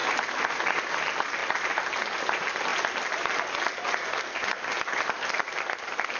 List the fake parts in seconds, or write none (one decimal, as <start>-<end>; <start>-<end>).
none